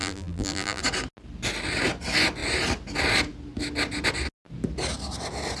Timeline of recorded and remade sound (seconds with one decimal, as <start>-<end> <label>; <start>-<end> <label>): 0.0-0.8 remade; 0.8-5.6 recorded